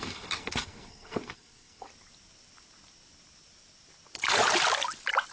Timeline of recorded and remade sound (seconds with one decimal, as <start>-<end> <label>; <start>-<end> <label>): 0.0-1.9 remade; 1.9-5.3 recorded